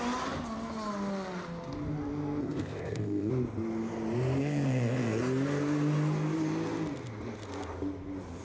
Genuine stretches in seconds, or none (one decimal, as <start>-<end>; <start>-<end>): 0.0-2.4; 3.3-4.4; 5.2-8.4